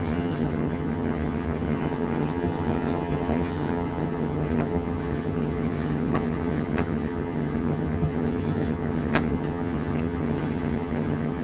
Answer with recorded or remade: remade